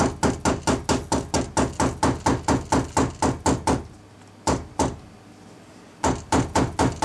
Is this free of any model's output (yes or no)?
yes